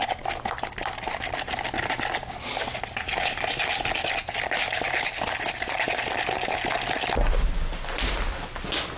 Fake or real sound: real